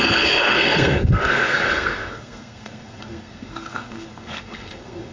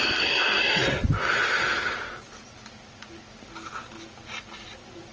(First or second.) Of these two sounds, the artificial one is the first